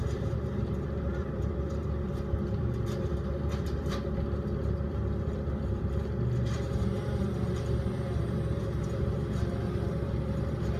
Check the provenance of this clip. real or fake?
fake